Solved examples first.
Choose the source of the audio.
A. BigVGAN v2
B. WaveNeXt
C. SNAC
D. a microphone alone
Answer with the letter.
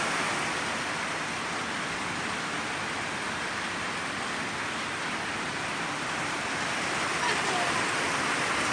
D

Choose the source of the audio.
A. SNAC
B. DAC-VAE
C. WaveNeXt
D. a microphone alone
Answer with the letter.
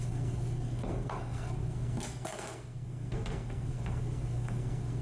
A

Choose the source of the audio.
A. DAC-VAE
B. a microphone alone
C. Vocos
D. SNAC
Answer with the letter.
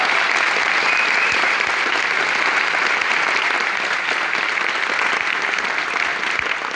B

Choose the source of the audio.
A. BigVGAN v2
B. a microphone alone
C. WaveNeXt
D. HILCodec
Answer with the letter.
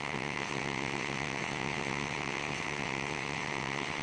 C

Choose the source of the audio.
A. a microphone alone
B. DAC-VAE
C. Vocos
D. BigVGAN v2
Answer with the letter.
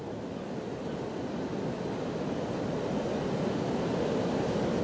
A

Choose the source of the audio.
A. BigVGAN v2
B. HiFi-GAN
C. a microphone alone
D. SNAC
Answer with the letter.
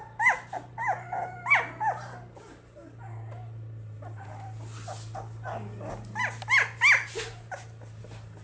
C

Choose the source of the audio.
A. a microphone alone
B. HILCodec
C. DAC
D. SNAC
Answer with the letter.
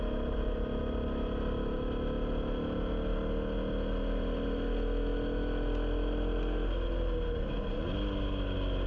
A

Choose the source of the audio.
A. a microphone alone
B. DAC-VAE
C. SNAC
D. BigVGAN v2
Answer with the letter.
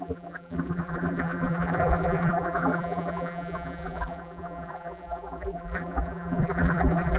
D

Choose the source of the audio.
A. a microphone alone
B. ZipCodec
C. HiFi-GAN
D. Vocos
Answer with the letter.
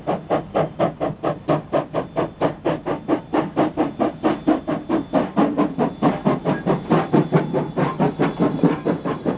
A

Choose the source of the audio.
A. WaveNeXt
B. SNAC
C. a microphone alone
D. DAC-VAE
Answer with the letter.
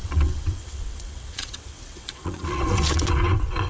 A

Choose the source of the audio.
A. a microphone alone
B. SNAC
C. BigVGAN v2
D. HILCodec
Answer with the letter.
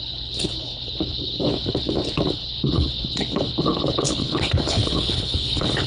D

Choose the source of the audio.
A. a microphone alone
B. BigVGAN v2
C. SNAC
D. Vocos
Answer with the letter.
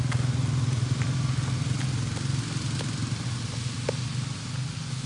A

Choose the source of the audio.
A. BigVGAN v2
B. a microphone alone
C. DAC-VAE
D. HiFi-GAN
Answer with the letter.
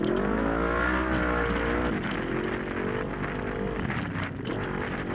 B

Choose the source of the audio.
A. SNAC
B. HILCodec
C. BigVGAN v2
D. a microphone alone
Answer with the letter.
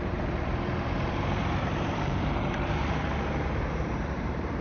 C